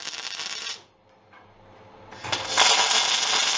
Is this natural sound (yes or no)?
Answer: yes